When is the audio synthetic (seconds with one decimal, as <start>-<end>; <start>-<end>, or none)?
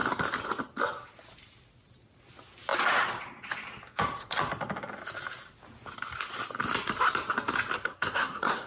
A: 7.8-8.7